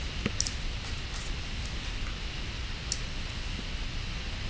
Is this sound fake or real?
real